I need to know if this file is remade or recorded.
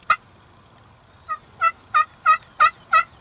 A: recorded